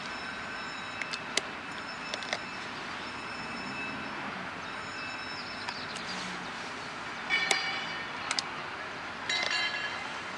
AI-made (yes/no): no